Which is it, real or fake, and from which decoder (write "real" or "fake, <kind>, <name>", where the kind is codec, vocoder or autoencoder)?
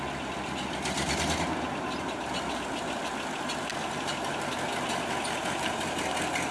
real